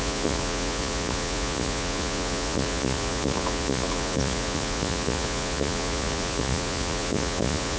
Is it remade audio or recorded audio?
remade